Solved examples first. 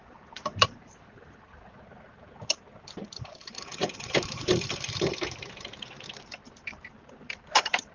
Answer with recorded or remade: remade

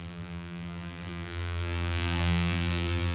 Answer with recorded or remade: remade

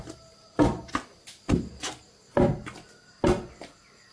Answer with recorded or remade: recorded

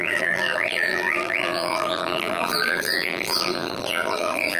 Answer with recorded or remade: remade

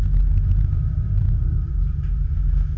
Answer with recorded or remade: remade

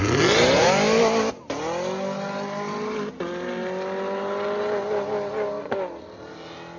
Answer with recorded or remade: recorded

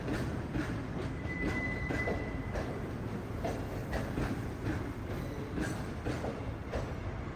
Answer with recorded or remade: recorded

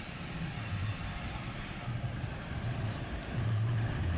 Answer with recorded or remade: remade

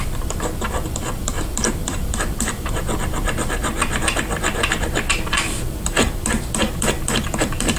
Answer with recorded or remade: remade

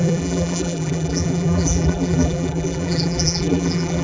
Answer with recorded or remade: remade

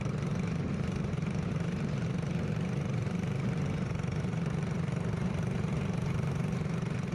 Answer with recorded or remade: remade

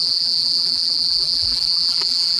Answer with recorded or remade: remade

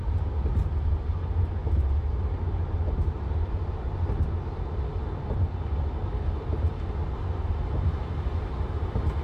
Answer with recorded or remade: recorded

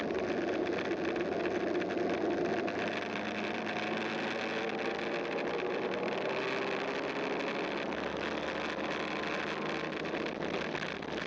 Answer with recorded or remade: recorded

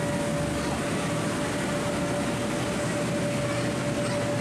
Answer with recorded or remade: recorded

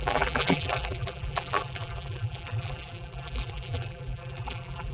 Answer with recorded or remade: remade